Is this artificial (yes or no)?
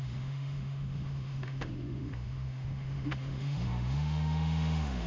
yes